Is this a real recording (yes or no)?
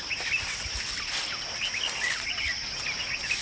yes